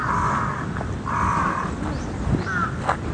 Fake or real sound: real